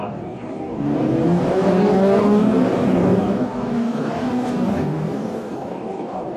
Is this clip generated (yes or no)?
yes